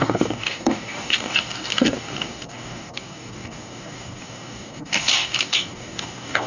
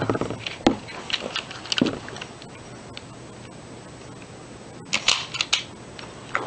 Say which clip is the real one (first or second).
second